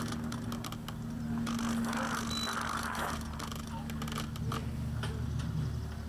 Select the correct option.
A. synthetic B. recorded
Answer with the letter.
B